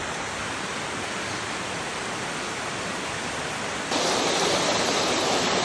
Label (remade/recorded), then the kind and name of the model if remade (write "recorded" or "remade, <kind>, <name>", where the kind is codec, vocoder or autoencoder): recorded